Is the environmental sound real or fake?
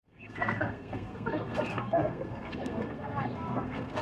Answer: fake